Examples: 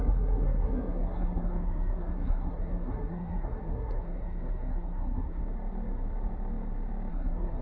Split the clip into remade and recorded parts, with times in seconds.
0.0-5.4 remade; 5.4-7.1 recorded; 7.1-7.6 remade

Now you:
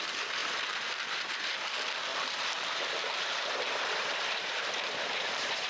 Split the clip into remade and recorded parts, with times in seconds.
0.0-0.4 recorded; 0.4-1.3 remade; 1.3-2.1 recorded; 2.1-5.7 remade

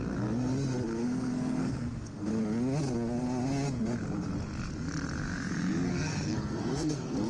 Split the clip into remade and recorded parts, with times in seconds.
0.0-1.0 recorded; 1.0-2.4 remade; 2.4-5.9 recorded; 5.9-7.3 remade

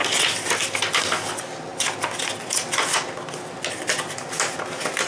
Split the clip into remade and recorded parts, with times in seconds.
0.0-5.1 recorded

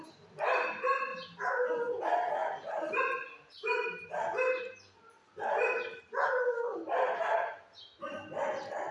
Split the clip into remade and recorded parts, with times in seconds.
0.0-1.1 recorded; 1.1-1.7 remade; 1.7-2.4 recorded; 2.4-7.6 remade; 7.6-8.9 recorded

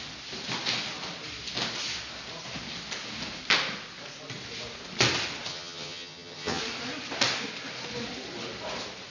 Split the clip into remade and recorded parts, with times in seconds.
0.0-5.5 recorded; 5.5-6.6 remade; 6.6-9.1 recorded

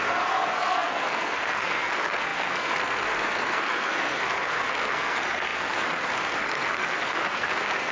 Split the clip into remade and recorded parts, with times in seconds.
0.0-7.9 remade